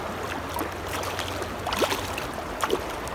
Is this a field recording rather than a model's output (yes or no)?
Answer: yes